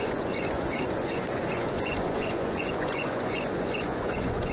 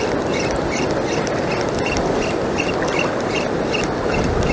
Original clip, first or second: second